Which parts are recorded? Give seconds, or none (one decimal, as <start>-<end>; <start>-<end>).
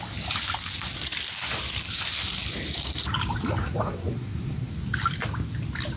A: 0.0-3.6; 4.7-6.0